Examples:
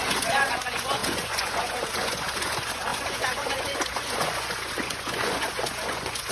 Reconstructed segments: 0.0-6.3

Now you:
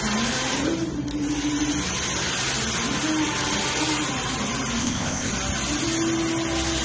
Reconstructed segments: 4.8-5.3

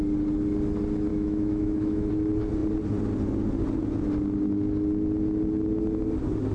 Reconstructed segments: 1.1-2.1

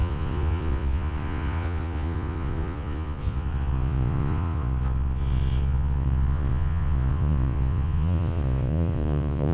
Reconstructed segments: 0.0-9.5

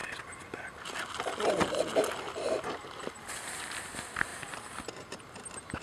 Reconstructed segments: none

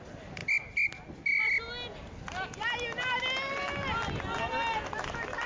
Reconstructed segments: none